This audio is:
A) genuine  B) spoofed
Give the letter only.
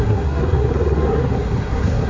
B